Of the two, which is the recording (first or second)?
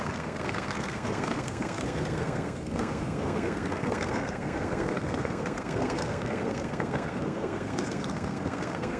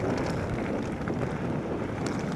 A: second